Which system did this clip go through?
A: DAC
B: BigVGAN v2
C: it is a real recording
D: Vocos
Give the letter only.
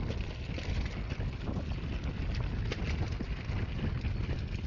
C